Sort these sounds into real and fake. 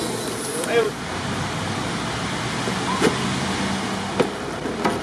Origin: real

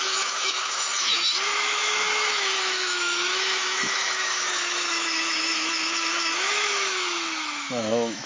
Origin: fake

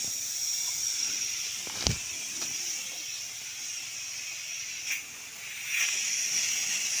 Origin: real